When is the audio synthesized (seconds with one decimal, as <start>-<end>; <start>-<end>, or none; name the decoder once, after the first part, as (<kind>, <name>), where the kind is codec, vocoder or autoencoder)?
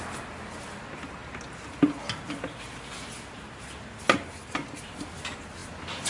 0.0-1.2 (vocoder, BigVGAN v2); 4.8-6.1